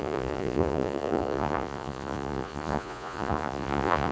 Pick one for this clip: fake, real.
fake